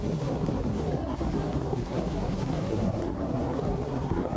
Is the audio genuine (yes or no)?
no